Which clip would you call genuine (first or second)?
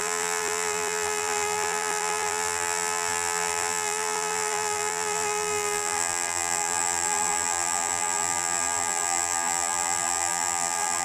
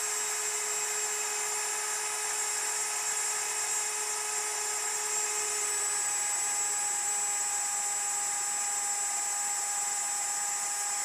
second